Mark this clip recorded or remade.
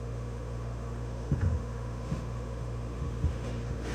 remade